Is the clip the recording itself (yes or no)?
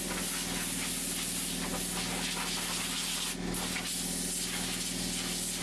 yes